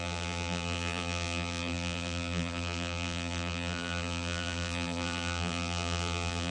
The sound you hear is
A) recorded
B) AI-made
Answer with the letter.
B